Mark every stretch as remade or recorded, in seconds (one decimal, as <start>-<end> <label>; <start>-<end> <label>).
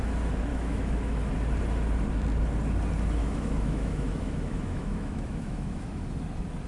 0.0-0.5 recorded; 0.5-1.3 remade; 1.3-3.2 recorded; 3.2-6.1 remade; 6.1-6.7 recorded